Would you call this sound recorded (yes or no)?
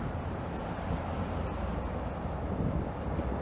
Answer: yes